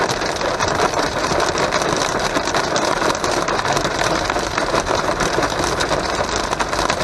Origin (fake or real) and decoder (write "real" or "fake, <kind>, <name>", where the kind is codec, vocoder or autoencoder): real